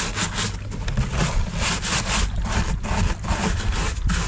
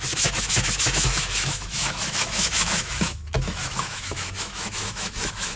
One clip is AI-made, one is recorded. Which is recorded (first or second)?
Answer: first